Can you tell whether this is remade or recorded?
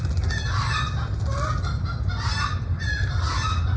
recorded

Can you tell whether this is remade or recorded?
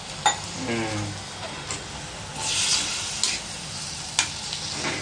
recorded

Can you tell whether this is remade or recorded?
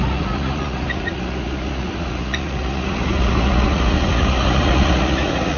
remade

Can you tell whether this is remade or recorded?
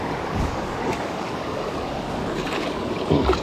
remade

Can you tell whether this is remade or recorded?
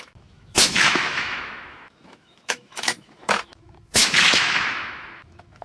remade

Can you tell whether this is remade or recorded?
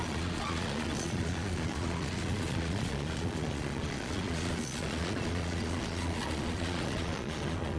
remade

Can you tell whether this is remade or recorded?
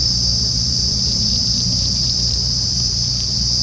remade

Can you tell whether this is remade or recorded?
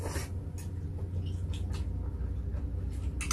recorded